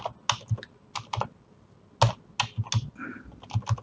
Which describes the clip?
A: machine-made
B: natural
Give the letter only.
B